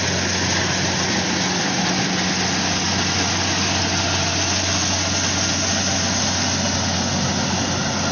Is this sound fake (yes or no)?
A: no